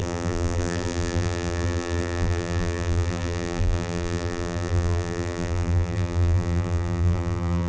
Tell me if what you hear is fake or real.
fake